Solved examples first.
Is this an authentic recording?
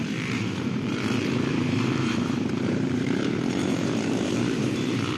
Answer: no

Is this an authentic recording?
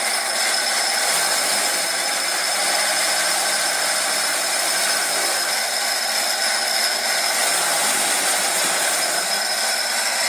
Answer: yes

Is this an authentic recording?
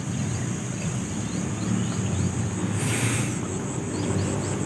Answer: yes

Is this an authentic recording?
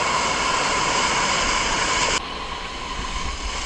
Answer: yes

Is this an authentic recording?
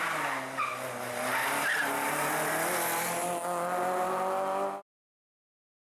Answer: yes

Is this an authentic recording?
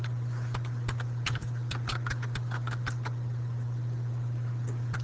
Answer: yes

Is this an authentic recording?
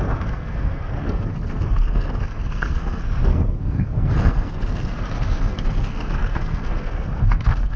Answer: no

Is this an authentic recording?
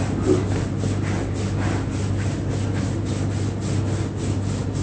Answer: yes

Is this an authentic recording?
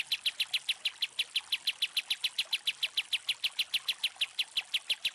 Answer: yes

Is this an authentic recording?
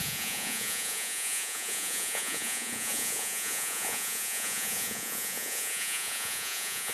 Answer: no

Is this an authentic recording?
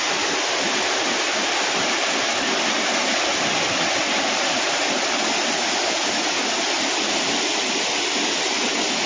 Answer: yes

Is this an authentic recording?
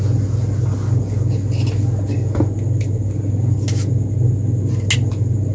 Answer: yes